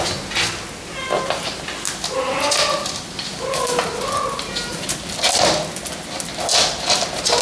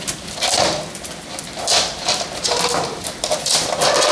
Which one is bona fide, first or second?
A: first